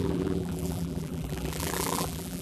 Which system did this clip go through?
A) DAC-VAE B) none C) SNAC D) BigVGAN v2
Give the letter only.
D